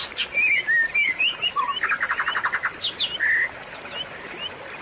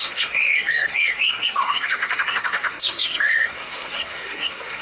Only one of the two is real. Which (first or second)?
first